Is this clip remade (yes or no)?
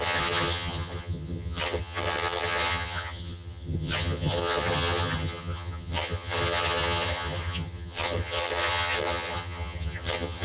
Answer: yes